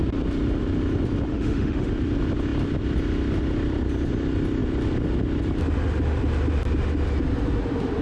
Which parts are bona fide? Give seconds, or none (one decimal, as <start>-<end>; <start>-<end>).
0.0-1.3; 1.9-8.0